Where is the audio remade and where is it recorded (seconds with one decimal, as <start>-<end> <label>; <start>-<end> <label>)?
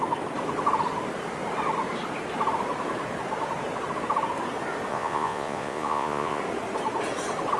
0.0-4.9 recorded; 4.9-6.4 remade; 6.4-7.6 recorded